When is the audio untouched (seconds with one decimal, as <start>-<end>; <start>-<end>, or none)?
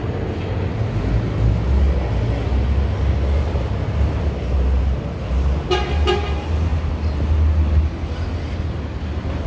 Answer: 0.0-9.5